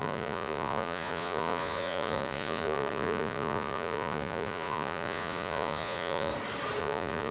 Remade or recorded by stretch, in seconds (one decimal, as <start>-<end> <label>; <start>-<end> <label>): 0.0-6.3 remade; 6.3-6.8 recorded; 6.8-7.3 remade